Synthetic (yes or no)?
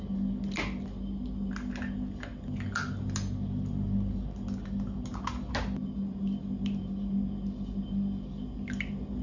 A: no